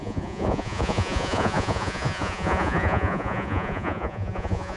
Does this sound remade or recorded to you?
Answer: remade